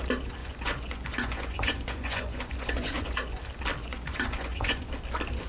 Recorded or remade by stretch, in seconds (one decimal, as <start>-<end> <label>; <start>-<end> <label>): 0.0-0.4 recorded; 0.4-3.4 remade; 3.4-3.8 recorded; 3.8-4.9 remade; 4.9-5.5 recorded